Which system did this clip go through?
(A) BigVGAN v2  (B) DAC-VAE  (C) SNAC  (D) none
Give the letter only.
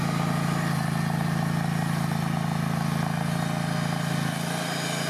D